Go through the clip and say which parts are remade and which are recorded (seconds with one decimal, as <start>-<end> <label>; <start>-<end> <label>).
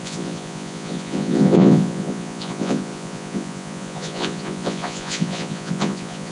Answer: 0.0-6.3 remade